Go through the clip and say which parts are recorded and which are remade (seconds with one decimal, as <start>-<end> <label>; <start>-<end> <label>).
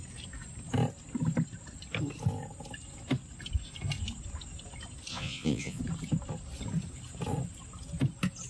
0.0-5.1 recorded; 5.1-5.8 remade; 5.8-8.5 recorded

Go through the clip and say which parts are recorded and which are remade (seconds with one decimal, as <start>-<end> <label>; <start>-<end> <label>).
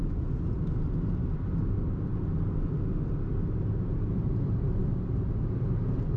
0.0-6.2 recorded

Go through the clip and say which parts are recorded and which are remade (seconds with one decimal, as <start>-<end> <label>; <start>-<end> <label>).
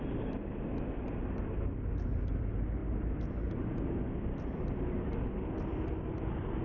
0.0-6.6 recorded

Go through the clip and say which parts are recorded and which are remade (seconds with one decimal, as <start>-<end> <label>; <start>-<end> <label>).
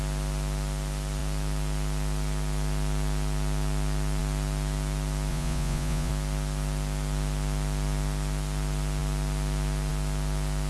0.0-5.3 recorded; 5.3-6.1 remade; 6.1-10.7 recorded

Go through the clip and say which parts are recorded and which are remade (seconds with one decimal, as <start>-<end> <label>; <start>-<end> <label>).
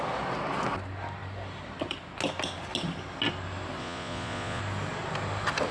0.0-3.8 recorded; 3.8-4.6 remade; 4.6-5.7 recorded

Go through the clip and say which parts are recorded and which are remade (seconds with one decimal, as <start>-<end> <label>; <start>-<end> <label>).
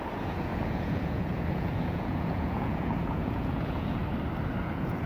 0.0-4.0 remade; 4.0-4.6 recorded; 4.6-5.1 remade